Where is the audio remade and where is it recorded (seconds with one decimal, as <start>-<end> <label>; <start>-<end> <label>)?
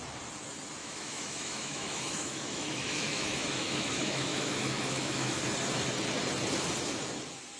0.0-0.8 recorded; 0.8-5.4 remade; 5.4-7.6 recorded